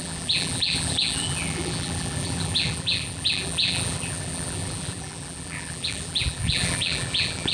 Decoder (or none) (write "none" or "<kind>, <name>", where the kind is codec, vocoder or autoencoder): vocoder, BigVGAN v2